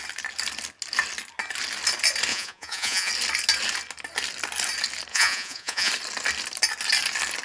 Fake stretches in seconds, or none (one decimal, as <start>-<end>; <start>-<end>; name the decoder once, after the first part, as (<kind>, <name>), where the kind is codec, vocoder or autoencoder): 2.3-3.1 (vocoder, Vocos); 5.1-5.9